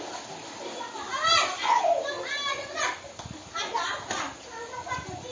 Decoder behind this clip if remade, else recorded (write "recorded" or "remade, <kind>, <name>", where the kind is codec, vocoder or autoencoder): recorded